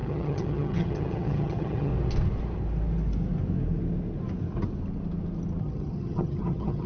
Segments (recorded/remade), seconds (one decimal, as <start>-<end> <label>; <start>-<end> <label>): 0.0-1.9 remade; 1.9-5.6 recorded; 5.6-6.9 remade